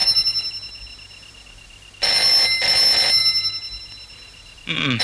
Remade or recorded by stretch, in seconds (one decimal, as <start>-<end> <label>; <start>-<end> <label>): 0.0-5.0 recorded